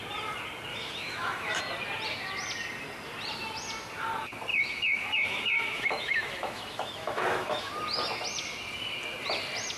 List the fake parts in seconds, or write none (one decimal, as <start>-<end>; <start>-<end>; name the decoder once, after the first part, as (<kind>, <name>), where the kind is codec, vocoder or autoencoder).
0.7-1.6 (autoencoder, DAC-VAE); 4.5-7.7